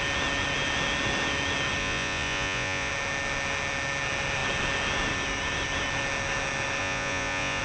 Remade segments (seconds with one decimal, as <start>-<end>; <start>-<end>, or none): 1.8-2.9; 6.8-7.6